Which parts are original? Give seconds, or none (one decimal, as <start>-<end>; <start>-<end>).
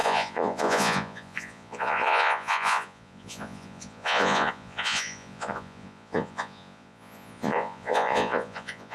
none